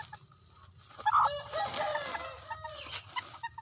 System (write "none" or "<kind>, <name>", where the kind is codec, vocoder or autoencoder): none